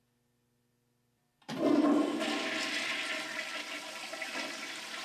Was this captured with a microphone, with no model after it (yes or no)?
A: yes